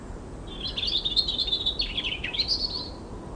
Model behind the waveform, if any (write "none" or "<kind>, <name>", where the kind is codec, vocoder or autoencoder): none